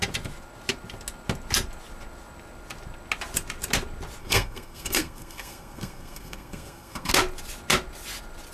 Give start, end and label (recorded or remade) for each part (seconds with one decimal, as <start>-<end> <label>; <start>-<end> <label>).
0.0-4.2 recorded; 4.2-7.1 remade; 7.1-8.5 recorded